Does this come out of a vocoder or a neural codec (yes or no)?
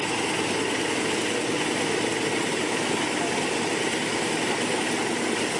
no